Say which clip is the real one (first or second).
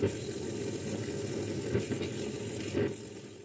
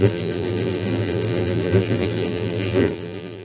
first